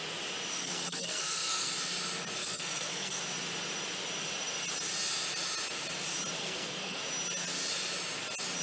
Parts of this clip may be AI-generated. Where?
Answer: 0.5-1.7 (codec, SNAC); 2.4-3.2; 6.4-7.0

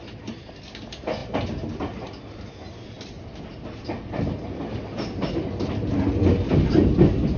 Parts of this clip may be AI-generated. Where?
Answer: none

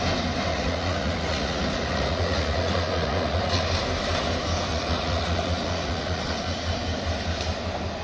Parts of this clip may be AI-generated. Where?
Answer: 0.5-3.7 (vocoder, Vocos); 4.7-6.7

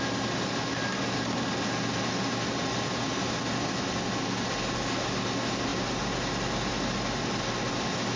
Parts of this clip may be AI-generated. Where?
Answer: none

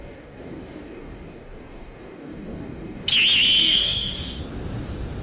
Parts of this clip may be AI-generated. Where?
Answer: 0.0-3.1 (codec, DAC); 3.6-4.4